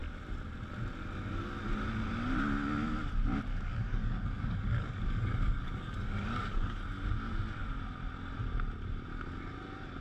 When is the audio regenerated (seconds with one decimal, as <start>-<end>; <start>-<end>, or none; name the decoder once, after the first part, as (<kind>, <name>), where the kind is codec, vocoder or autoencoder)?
3.5-6.8 (codec, DAC)